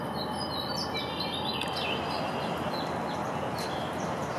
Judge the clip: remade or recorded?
recorded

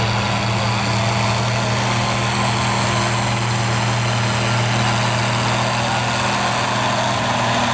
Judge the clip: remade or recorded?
recorded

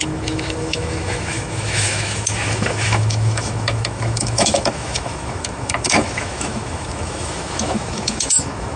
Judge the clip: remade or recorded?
remade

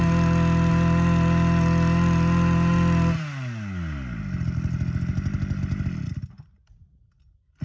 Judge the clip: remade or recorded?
recorded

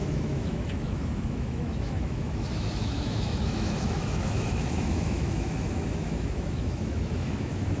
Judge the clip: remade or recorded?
remade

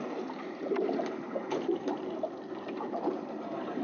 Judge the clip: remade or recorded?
recorded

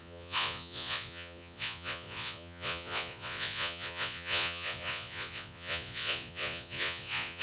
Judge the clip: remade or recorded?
remade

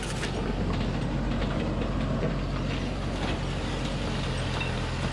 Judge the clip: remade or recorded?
recorded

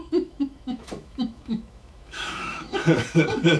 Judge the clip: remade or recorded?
remade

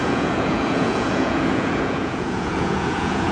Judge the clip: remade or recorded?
remade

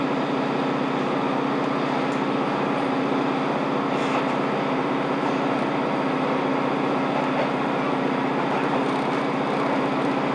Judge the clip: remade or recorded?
recorded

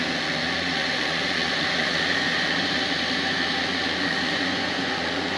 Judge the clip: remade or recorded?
remade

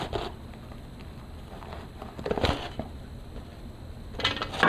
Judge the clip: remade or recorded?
recorded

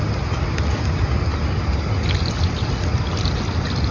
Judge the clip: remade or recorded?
recorded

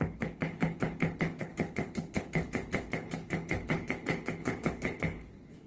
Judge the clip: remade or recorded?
remade